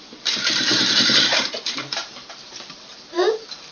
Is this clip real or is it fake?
fake